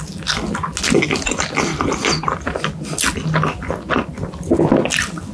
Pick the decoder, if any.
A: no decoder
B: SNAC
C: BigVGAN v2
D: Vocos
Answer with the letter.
A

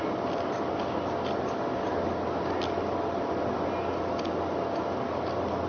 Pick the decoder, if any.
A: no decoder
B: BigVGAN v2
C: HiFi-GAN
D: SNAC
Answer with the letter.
A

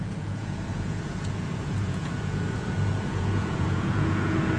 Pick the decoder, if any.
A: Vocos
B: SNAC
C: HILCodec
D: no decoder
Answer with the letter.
A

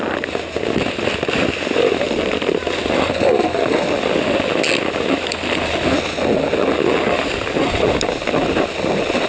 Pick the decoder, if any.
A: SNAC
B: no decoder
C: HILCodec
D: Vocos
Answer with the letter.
B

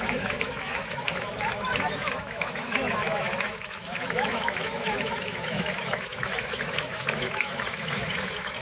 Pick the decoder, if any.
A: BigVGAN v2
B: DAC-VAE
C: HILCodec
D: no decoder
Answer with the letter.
B